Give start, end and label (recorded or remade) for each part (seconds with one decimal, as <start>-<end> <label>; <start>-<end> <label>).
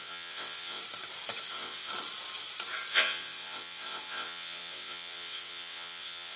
0.0-0.8 remade; 0.8-1.5 recorded; 1.5-1.9 remade; 1.9-2.9 recorded; 2.9-6.4 remade